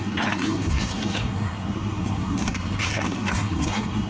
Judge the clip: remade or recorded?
remade